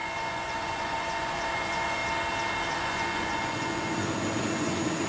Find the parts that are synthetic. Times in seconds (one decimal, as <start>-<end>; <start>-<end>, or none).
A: 0.0-2.0; 2.8-5.1